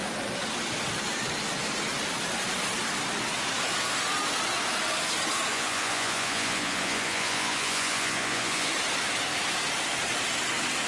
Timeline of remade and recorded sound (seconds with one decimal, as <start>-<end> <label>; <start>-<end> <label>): 0.0-5.5 recorded; 5.5-8.7 remade; 8.7-10.9 recorded